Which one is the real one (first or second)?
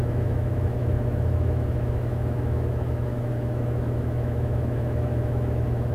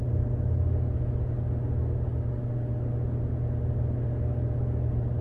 second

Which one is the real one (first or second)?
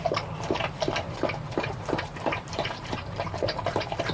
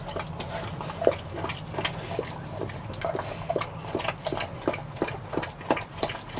second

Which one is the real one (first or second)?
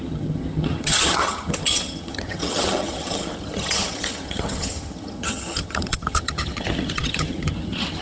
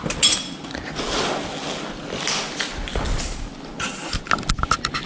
second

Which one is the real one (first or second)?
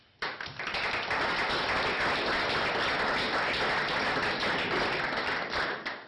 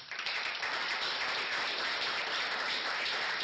first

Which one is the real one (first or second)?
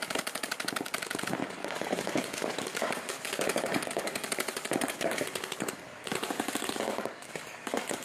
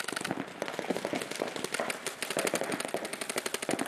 second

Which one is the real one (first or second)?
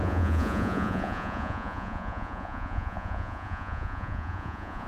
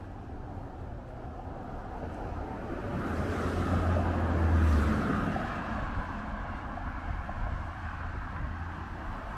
second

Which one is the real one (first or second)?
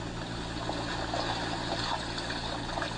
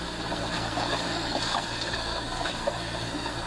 first